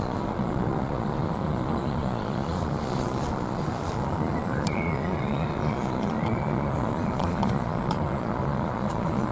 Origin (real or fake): fake